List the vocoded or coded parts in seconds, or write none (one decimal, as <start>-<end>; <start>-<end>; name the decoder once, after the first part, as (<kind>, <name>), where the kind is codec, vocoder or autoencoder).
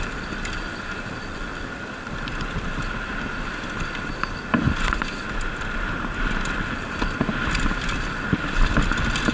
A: none